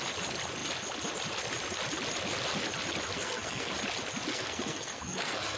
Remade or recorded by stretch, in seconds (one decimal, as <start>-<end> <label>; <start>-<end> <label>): 0.0-3.1 recorded; 3.1-3.7 remade; 3.7-4.3 recorded; 4.3-5.6 remade